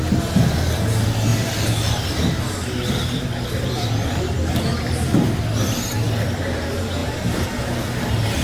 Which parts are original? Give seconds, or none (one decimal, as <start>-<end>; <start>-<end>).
0.0-7.0; 7.5-8.4

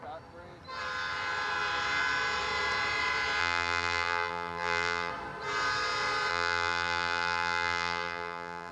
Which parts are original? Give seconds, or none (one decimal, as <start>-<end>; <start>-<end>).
0.0-3.4; 5.1-6.3

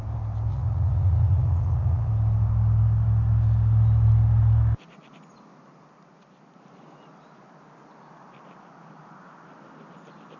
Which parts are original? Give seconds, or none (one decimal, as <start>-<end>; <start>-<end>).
0.0-0.5; 2.1-10.4

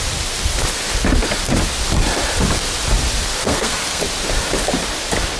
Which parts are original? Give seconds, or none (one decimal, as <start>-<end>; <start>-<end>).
0.0-3.4; 4.0-5.4

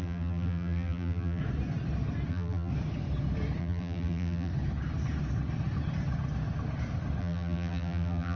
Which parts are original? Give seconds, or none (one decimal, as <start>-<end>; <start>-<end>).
1.4-2.3; 2.7-3.6; 4.5-7.2

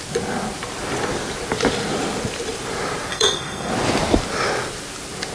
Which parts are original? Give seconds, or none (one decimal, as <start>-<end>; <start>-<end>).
0.0-3.1; 3.7-5.3

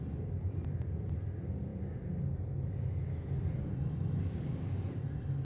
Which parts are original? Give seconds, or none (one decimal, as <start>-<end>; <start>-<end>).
none